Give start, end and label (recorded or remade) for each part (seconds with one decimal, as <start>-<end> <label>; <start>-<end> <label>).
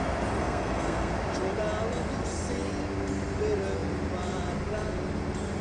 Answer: 0.0-0.4 recorded; 0.4-1.1 remade; 1.1-5.6 recorded